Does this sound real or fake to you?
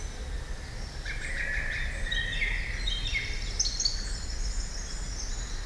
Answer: real